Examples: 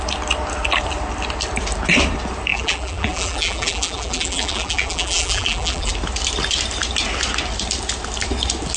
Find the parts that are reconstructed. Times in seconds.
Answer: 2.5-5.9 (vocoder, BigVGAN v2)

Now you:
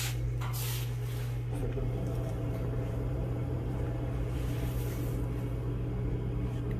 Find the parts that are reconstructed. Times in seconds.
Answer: 1.6-4.7 (vocoder, BigVGAN v2)

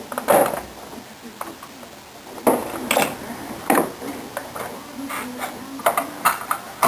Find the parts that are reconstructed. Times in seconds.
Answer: none

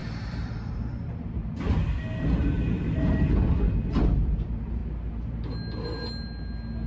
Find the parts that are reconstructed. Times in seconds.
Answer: 0.0-1.8 (vocoder, BigVGAN v2); 2.4-4.8

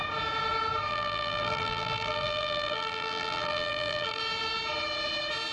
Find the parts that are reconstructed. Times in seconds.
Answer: 0.9-4.2 (vocoder, BigVGAN v2)

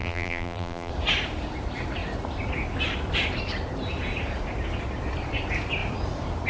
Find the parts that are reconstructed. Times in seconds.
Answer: 0.0-0.9 (vocoder, BigVGAN v2)

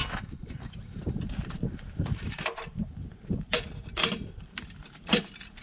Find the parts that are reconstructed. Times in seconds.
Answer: 0.8-5.6 (vocoder, BigVGAN v2)